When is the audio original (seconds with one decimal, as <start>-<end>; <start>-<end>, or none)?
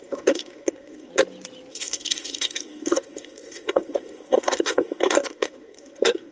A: 1.1-1.7